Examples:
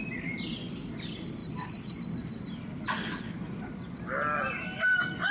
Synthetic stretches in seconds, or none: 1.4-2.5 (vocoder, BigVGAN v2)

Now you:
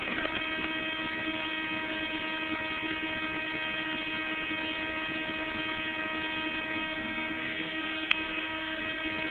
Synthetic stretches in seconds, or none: 6.8-8.8 (codec, SNAC)